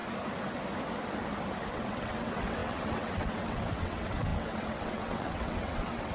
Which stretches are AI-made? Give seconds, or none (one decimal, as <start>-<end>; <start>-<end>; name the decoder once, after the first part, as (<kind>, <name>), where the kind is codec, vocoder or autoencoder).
1.7-6.1 (vocoder, WaveNeXt)